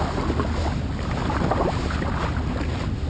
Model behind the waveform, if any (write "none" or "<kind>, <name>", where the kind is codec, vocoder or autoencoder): none